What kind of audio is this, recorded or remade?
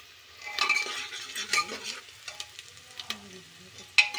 recorded